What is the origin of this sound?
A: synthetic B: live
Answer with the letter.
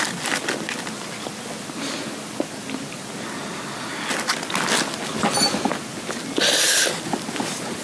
B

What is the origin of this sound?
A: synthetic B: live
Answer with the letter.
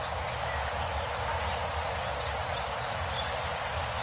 B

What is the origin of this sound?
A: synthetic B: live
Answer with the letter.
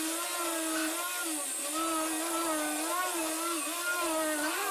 B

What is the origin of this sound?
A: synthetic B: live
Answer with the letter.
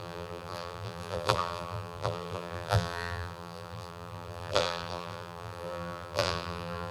A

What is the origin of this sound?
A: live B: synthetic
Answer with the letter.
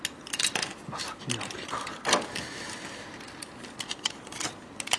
A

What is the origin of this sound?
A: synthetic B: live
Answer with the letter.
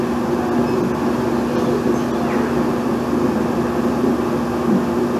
B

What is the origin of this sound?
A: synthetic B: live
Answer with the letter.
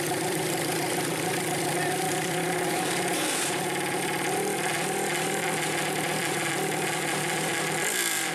A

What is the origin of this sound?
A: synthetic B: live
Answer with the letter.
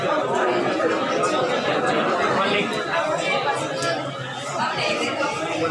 B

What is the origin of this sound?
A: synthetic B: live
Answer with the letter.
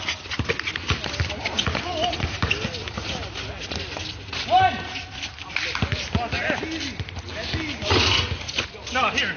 B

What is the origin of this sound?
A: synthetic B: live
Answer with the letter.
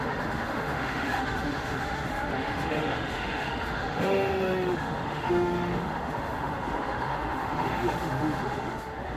A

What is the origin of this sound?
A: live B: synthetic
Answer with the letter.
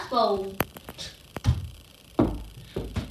B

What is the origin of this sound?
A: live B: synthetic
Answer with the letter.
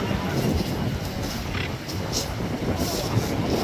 A